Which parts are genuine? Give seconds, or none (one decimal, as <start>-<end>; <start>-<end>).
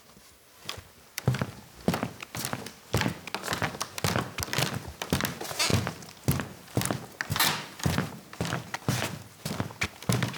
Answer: 0.0-0.6; 1.4-7.3; 8.1-10.4